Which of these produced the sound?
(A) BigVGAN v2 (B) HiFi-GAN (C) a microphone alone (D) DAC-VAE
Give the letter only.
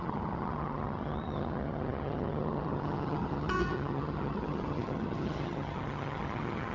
B